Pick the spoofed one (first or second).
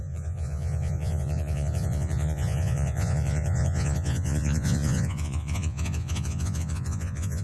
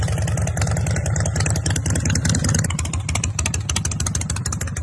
first